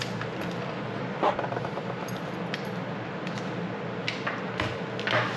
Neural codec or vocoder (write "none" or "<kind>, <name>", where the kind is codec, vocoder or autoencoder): none